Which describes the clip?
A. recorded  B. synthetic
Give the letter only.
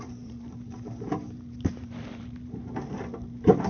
B